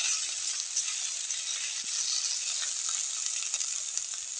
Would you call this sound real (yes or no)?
yes